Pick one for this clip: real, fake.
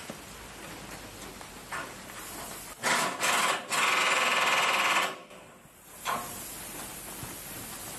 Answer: real